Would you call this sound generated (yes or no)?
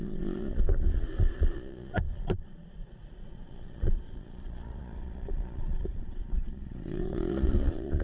yes